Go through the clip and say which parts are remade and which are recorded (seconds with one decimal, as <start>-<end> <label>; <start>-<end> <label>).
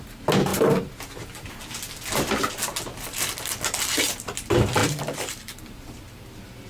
0.0-2.9 recorded; 2.9-3.4 remade; 3.4-4.8 recorded; 4.8-5.6 remade; 5.6-6.7 recorded